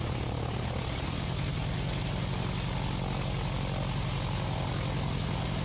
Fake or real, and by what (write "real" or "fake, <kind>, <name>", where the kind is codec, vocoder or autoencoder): real